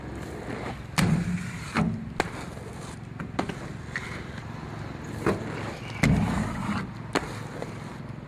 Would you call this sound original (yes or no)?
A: yes